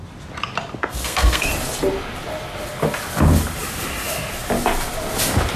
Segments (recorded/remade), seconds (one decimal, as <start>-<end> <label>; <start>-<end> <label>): 0.0-0.8 recorded; 0.8-1.5 remade; 1.5-5.6 recorded